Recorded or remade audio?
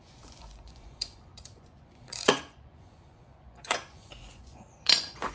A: remade